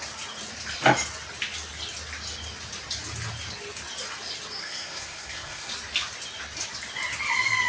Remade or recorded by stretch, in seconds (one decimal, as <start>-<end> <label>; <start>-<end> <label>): 0.0-4.6 recorded; 4.6-5.7 remade; 5.7-7.7 recorded